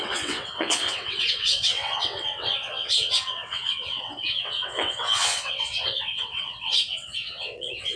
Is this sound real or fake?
fake